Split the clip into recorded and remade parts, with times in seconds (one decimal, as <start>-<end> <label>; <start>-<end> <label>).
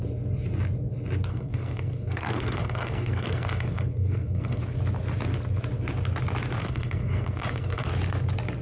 0.0-1.3 recorded; 1.3-4.6 remade; 4.6-6.6 recorded; 6.6-7.9 remade; 7.9-8.6 recorded